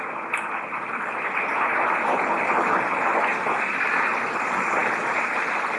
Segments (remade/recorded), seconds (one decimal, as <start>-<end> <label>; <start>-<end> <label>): 0.0-5.8 recorded